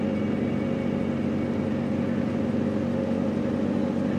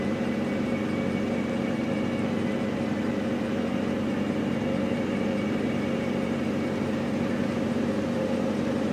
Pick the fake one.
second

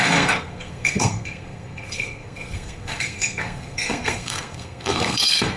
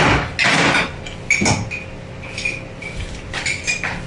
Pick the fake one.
first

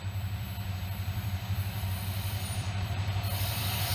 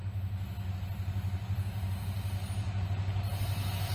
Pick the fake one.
first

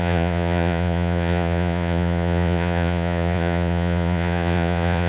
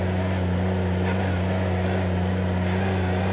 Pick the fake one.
first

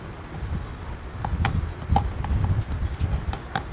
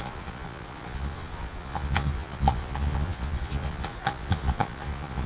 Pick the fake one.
second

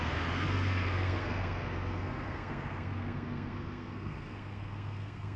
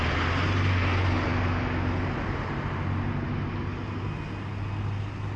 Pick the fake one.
first